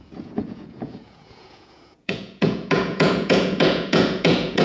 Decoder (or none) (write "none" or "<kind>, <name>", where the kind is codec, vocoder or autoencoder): vocoder, Vocos